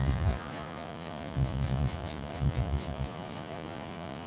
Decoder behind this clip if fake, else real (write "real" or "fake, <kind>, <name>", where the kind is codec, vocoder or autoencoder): fake, vocoder, Vocos